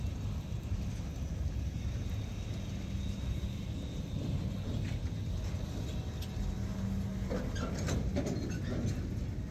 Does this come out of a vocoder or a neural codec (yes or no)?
no